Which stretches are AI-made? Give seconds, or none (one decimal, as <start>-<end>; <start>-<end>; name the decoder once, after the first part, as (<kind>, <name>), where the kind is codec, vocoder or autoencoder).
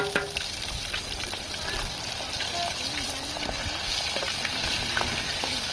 none